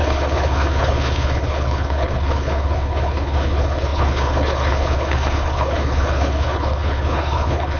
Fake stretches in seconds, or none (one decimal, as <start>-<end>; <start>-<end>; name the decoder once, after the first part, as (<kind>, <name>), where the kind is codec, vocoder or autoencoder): 0.0-7.8 (codec, HILCodec)